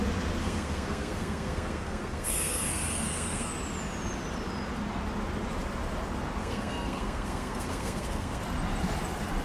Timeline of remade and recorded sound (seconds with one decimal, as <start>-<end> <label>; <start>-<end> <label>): 0.0-0.4 recorded; 0.4-3.5 remade; 3.5-6.4 recorded; 6.4-8.4 remade; 8.4-9.4 recorded